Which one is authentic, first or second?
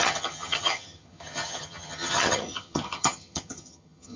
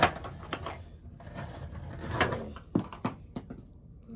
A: second